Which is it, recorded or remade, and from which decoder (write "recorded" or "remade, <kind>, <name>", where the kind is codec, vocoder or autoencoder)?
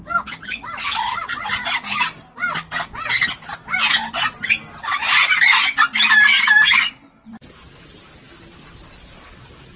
recorded